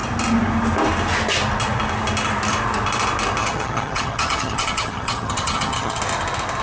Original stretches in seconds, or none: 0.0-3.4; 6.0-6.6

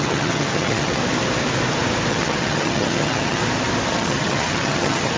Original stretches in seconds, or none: 1.0-2.1; 3.4-3.9

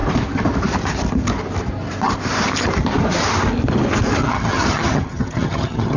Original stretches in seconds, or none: 0.0-4.2

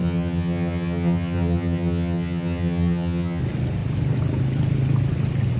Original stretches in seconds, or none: 3.4-5.6